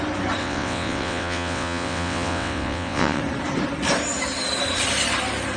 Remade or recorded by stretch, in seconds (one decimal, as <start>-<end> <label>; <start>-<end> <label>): 0.0-0.4 recorded; 0.4-3.2 remade; 3.2-5.6 recorded